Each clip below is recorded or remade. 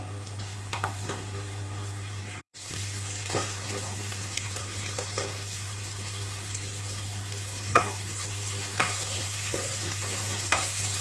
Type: remade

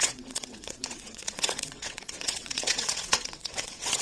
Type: remade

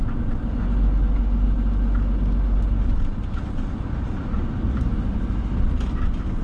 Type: recorded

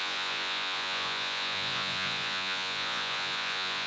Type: remade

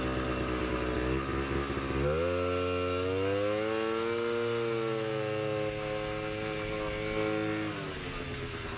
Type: recorded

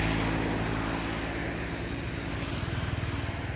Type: recorded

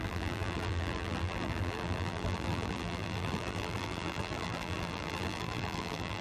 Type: remade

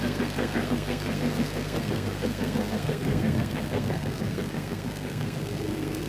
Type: remade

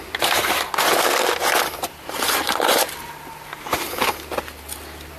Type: recorded